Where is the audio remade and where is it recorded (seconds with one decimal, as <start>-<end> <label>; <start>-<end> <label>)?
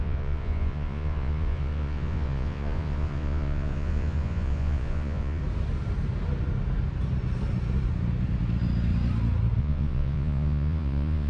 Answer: 0.0-5.4 remade; 5.4-9.6 recorded; 9.6-11.3 remade